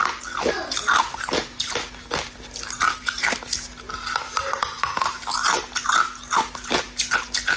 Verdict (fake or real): real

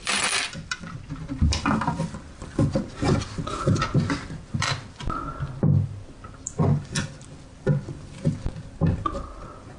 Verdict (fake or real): fake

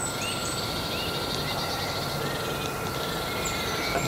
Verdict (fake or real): real